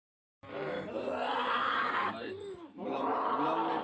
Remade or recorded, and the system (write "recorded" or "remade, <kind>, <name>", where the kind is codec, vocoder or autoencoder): remade, vocoder, BigVGAN v2